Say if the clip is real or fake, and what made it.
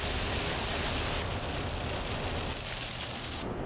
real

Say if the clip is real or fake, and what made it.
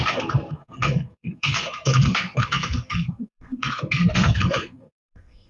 fake, codec, SNAC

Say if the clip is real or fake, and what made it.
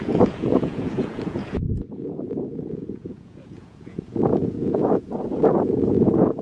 fake, vocoder, Vocos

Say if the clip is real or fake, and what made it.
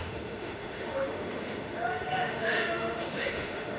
fake, autoencoder, DAC-VAE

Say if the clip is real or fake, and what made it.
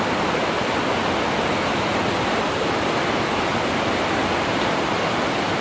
real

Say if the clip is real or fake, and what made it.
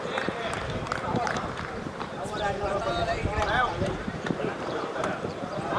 fake, vocoder, BigVGAN v2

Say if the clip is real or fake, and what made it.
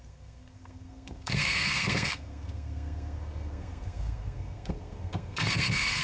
fake, codec, SNAC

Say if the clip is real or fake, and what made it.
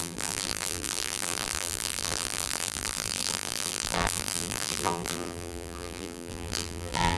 fake, vocoder, BigVGAN v2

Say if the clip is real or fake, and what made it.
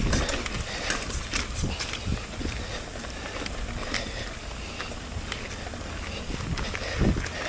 real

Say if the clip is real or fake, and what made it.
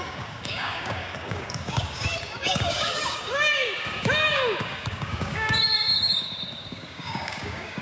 fake, codec, DAC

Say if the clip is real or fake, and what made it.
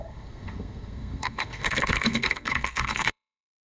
fake, codec, SNAC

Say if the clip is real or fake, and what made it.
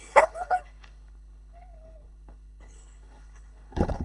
fake, codec, HILCodec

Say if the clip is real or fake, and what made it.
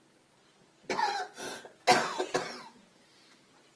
real